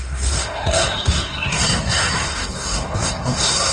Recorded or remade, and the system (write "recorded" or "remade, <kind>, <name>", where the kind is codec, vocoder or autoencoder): remade, codec, SNAC